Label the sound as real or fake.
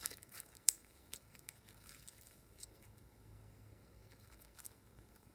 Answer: fake